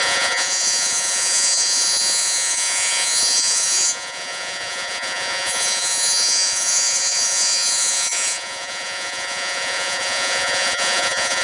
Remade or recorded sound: remade